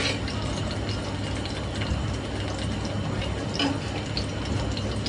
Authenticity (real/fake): real